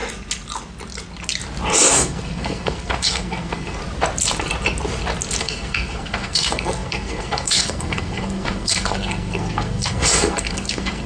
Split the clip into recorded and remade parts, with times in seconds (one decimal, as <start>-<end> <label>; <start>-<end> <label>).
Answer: 0.0-1.9 recorded; 1.9-3.8 remade; 3.8-5.4 recorded; 5.4-11.1 remade